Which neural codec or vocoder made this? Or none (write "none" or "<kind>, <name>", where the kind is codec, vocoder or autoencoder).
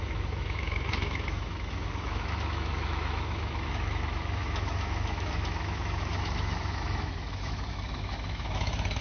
autoencoder, DAC-VAE